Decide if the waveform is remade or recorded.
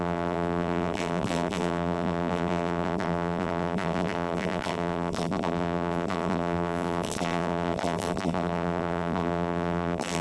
remade